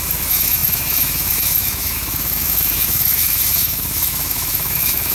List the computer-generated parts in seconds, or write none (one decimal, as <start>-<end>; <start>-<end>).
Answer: 0.0-5.1